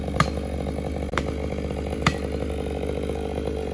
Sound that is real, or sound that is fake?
real